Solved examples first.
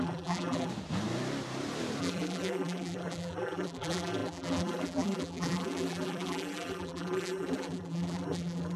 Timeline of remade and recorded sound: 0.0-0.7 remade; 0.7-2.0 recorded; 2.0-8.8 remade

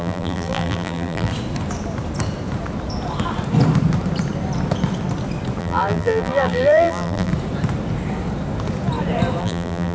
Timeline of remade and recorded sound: 0.0-1.3 remade; 1.3-5.6 recorded; 5.6-7.3 remade; 7.3-9.4 recorded; 9.4-9.9 remade

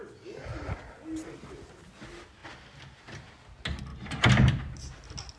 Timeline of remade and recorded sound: 0.0-3.9 recorded; 3.9-4.6 remade; 4.6-5.4 recorded

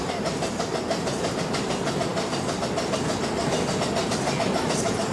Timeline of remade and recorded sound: 0.0-5.1 recorded